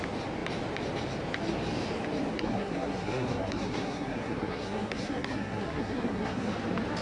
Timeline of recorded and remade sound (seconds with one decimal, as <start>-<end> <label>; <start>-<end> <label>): 0.0-2.3 recorded; 2.3-6.5 remade; 6.5-7.0 recorded